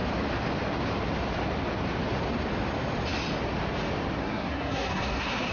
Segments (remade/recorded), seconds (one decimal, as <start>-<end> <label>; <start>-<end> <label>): 0.0-4.2 recorded; 4.2-5.5 remade